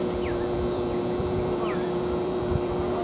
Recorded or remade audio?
remade